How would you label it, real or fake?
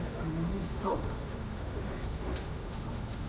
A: fake